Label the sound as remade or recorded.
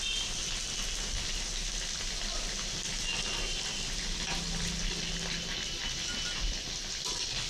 recorded